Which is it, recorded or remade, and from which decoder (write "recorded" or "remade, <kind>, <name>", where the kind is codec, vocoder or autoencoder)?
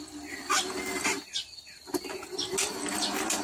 recorded